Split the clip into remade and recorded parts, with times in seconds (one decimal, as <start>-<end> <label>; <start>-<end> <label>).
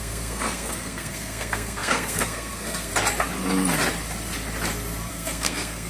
0.0-2.9 remade; 2.9-5.1 recorded; 5.1-5.9 remade